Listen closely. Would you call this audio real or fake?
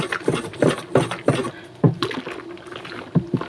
real